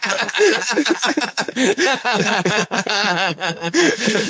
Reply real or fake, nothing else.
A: fake